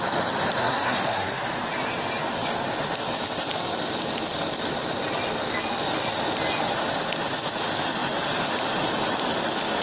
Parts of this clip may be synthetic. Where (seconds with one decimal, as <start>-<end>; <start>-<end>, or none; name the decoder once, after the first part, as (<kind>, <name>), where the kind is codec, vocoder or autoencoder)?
0.6-1.4 (codec, SNAC)